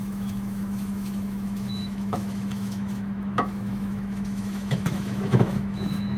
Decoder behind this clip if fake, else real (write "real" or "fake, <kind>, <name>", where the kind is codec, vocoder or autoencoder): fake, autoencoder, DAC-VAE